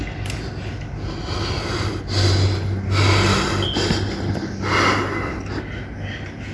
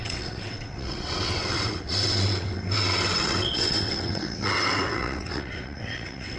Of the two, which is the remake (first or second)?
second